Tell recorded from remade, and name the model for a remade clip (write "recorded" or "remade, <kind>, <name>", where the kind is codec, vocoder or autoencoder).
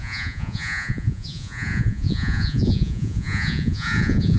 remade, vocoder, Vocos